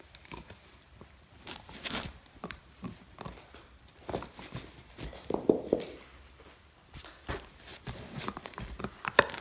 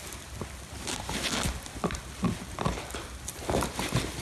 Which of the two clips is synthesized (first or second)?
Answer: first